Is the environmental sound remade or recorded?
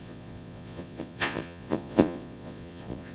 remade